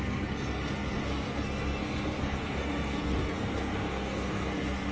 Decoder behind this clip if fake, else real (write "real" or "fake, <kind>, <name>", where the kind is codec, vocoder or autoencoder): fake, codec, SNAC